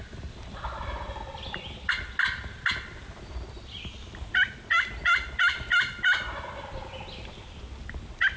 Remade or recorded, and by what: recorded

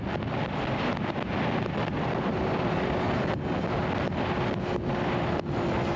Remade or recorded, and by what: recorded